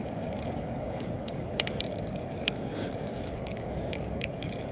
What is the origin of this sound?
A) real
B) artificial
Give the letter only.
B